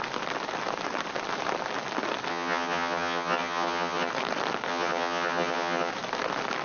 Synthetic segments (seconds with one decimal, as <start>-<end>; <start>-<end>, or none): 2.3-4.1; 4.7-5.9